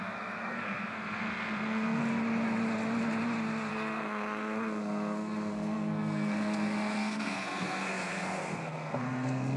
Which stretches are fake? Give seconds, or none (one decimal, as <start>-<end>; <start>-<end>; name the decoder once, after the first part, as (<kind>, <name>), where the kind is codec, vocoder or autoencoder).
0.0-2.0 (codec, SNAC); 3.7-9.6